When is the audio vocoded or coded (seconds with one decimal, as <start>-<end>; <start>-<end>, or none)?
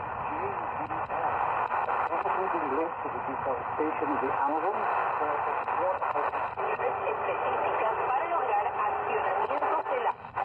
6.7-9.3